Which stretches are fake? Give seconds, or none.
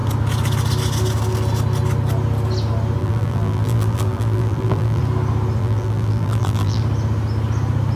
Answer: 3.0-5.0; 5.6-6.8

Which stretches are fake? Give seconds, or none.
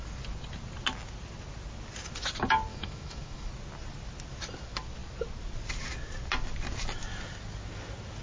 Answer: 2.7-3.5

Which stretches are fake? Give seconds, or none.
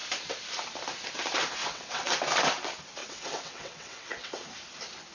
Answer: 1.6-2.1; 3.0-4.3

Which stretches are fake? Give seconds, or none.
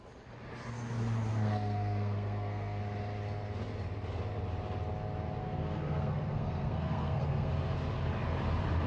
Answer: 1.3-2.8; 5.4-7.5